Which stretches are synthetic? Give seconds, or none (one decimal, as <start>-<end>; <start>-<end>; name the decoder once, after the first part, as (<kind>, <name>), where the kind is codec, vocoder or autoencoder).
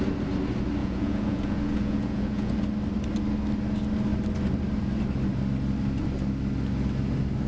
0.8-2.5 (vocoder, Vocos)